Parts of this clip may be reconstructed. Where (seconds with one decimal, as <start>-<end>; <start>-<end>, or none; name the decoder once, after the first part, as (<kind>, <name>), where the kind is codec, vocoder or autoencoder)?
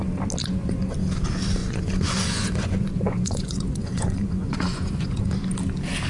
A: 0.4-0.9 (vocoder, Vocos); 1.6-5.3